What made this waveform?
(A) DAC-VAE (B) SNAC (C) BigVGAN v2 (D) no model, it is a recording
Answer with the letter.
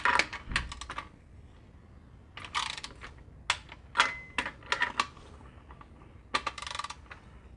D